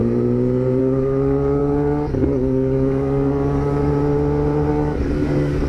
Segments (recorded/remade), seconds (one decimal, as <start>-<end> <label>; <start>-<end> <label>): 0.0-0.8 recorded; 0.8-3.9 remade; 3.9-4.7 recorded; 4.7-5.7 remade

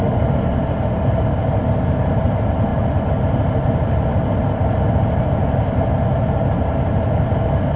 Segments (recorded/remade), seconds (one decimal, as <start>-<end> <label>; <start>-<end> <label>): 0.0-7.8 recorded

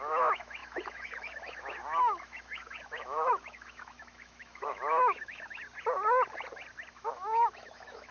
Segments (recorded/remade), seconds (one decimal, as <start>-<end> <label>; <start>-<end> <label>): 0.0-5.6 remade; 5.6-6.9 recorded; 6.9-8.1 remade

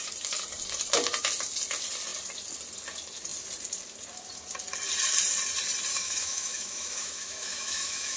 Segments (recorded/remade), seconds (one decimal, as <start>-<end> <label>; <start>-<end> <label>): 0.0-5.9 recorded; 5.9-8.2 remade

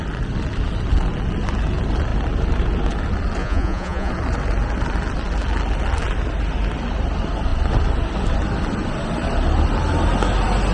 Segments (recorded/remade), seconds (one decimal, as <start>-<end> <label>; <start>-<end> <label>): 0.0-3.4 recorded; 3.4-4.1 remade; 4.1-10.7 recorded

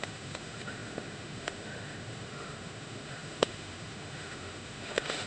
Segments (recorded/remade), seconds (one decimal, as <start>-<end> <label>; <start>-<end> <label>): 0.0-5.3 remade

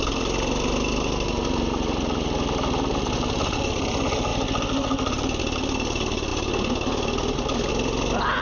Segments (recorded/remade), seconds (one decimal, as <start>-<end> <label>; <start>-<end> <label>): 0.0-8.4 recorded